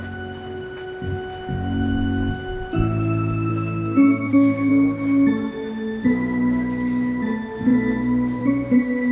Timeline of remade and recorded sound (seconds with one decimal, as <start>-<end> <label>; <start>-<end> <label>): 0.0-3.5 recorded; 3.5-4.7 remade; 4.7-9.1 recorded